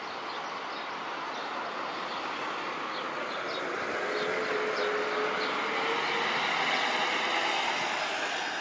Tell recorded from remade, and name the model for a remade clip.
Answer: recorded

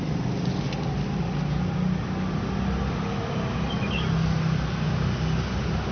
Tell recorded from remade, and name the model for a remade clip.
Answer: recorded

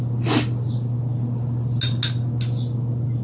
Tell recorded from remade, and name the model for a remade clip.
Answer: recorded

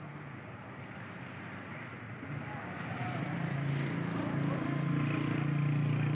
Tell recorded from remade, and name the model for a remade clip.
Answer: recorded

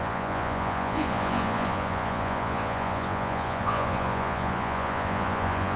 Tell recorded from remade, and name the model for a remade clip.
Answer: remade, vocoder, Vocos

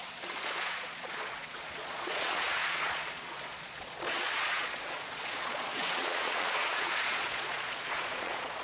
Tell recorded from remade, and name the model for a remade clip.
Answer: remade, vocoder, Vocos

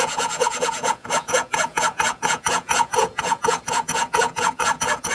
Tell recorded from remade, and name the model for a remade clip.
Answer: remade, vocoder, Vocos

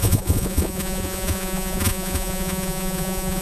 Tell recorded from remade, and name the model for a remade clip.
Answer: remade, vocoder, Vocos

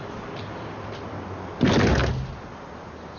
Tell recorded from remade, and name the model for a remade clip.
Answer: recorded